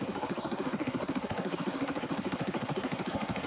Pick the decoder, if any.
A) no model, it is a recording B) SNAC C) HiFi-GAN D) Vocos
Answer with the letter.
B